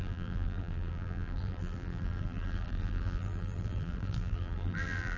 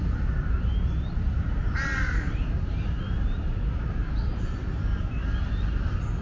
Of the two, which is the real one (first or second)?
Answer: second